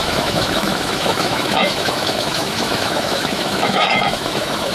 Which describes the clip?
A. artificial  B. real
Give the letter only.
A